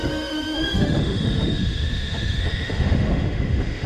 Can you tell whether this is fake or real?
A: fake